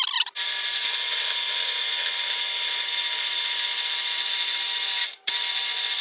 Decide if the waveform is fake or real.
real